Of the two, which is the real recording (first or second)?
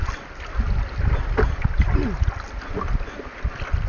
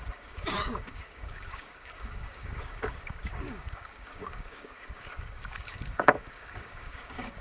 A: first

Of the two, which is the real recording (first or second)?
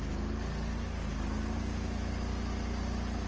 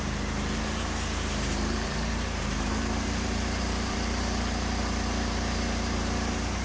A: first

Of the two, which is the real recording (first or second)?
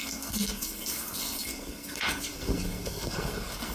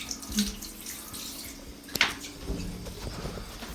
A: second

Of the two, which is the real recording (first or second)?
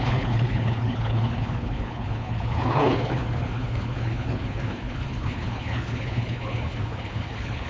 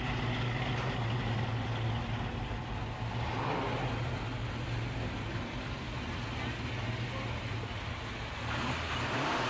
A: second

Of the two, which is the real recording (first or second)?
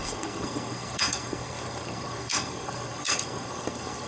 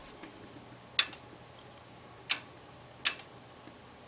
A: second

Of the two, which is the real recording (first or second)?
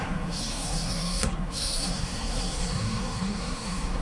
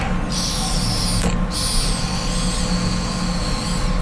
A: second